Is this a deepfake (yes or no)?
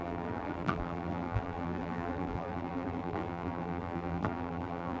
yes